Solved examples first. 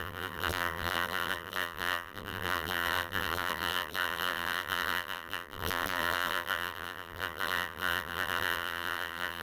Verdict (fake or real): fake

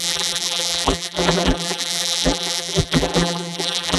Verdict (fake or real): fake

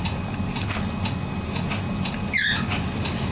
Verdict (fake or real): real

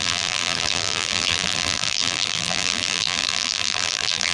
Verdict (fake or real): fake